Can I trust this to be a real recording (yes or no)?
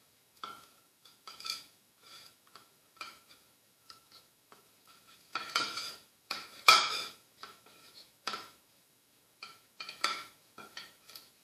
no